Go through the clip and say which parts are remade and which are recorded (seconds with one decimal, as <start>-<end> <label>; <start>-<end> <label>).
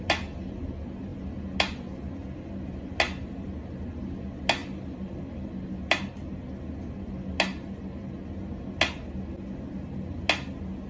0.0-10.9 recorded